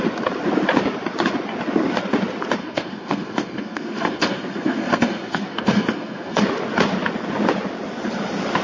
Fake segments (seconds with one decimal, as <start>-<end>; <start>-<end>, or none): 2.6-6.4

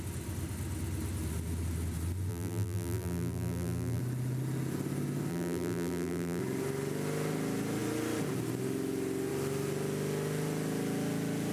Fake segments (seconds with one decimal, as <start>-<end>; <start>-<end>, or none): 2.3-4.0; 5.3-6.4